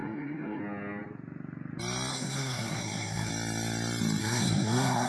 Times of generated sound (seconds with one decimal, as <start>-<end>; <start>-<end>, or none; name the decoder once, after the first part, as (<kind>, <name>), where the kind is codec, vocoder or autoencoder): 0.0-0.6 (codec, SNAC); 2.1-3.3; 4.2-5.1